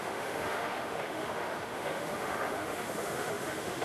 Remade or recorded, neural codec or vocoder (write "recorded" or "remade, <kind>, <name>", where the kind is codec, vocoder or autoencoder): remade, autoencoder, DAC-VAE